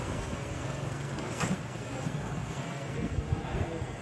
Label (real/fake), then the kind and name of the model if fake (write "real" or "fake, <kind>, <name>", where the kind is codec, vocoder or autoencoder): fake, codec, SNAC